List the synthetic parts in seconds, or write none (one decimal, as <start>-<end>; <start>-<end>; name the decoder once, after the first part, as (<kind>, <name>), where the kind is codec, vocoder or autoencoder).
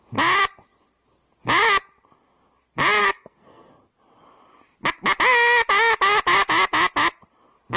3.0-3.7 (codec, SNAC)